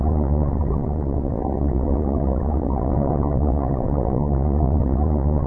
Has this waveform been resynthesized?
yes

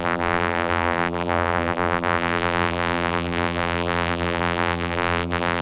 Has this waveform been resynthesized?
yes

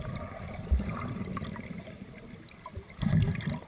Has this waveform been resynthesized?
no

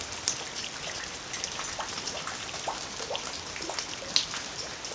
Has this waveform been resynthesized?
no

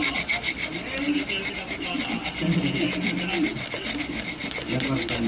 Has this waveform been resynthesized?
no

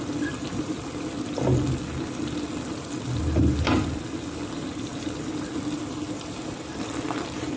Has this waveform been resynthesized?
no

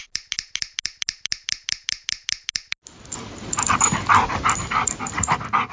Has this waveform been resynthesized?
no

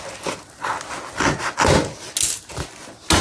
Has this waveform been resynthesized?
no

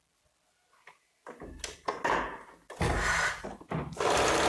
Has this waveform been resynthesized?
no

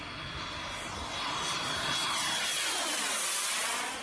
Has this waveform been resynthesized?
no